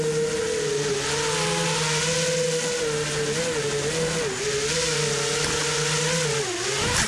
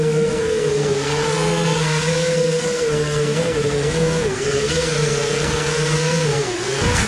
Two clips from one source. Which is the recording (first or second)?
first